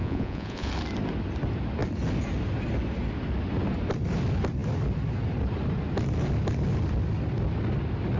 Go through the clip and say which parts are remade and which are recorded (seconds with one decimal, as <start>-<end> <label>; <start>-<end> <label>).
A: 0.0-0.7 remade; 0.7-8.2 recorded

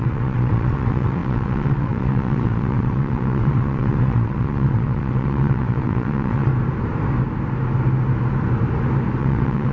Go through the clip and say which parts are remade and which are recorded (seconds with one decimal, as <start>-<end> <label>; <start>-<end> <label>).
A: 0.0-6.5 remade; 6.5-9.2 recorded; 9.2-9.7 remade

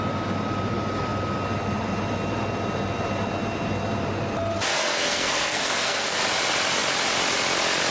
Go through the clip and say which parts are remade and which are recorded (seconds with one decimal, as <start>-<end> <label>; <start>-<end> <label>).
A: 0.0-4.7 recorded; 4.7-6.2 remade; 6.2-7.9 recorded

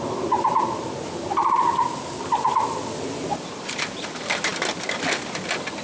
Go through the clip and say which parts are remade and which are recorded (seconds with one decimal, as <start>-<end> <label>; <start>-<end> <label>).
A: 0.0-3.3 recorded; 3.3-3.8 remade; 3.8-5.8 recorded

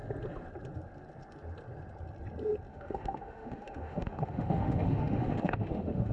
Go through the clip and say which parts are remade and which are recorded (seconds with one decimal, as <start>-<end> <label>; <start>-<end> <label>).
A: 0.0-2.7 recorded; 2.7-6.1 remade

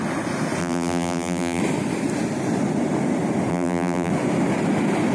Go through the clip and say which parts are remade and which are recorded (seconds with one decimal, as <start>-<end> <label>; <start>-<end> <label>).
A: 0.0-0.6 recorded; 0.6-1.6 remade; 1.6-3.5 recorded; 3.5-4.1 remade; 4.1-5.1 recorded